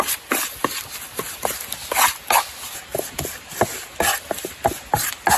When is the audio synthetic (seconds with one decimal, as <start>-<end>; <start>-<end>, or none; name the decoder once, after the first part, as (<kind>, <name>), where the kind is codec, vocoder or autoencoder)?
2.9-3.8 (vocoder, BigVGAN v2)